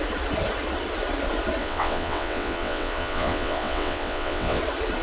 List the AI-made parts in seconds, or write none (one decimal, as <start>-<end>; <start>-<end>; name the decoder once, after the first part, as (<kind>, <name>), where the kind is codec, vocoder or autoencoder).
1.6-4.6 (vocoder, WaveNeXt)

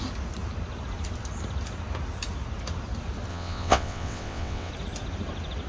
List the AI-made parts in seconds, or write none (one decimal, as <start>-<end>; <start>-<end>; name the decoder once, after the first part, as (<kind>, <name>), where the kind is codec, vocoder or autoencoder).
3.3-4.7 (vocoder, WaveNeXt)